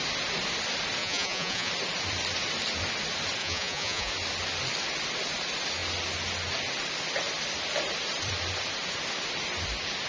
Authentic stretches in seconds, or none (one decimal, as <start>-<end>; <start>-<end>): 0.0-1.0; 1.7-3.4; 4.1-10.1